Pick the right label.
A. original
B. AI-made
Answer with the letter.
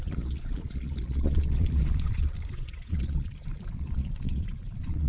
B